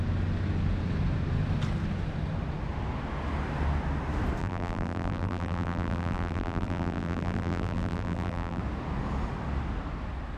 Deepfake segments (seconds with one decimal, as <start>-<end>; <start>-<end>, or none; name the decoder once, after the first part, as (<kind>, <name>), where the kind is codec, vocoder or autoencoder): 4.4-8.6 (vocoder, BigVGAN v2)